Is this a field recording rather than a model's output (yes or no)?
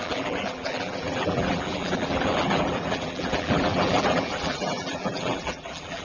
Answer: no